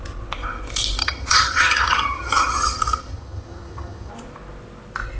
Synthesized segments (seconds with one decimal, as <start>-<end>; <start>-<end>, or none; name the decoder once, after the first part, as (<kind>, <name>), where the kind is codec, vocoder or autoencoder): 1.0-4.1 (vocoder, HiFi-GAN)